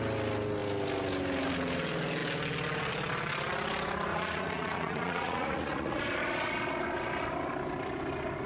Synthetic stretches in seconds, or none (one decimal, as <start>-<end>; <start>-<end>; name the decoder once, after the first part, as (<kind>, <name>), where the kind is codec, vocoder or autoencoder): 4.1-6.0 (vocoder, Vocos)